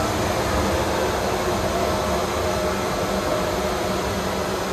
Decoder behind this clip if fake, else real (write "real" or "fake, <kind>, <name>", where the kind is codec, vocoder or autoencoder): real